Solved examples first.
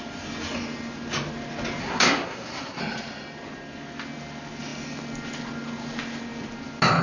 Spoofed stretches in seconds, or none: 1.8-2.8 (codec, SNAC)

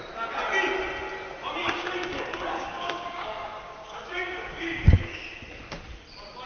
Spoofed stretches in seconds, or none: 1.6-5.2 (codec, DAC)